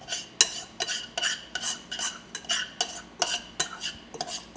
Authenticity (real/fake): real